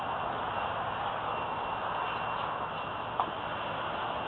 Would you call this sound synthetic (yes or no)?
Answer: no